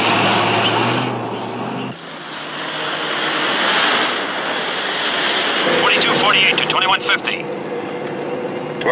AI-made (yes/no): no